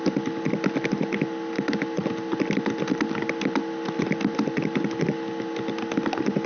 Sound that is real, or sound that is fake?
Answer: real